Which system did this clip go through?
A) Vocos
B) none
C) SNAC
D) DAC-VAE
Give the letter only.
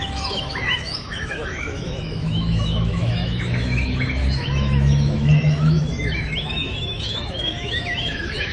D